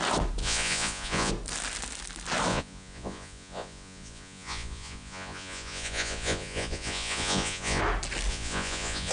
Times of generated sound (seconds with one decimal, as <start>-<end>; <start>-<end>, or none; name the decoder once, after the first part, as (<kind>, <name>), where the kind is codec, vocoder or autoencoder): 0.4-1.3 (vocoder, Vocos); 2.5-7.8; 8.3-9.1